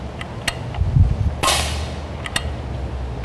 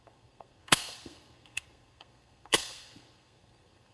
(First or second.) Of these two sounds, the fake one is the second